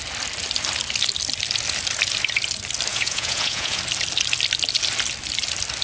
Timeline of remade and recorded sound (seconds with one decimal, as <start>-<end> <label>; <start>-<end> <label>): 0.0-2.9 recorded; 2.9-3.8 remade; 3.8-5.8 recorded